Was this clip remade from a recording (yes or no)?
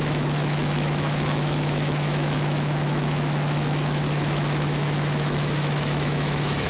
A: yes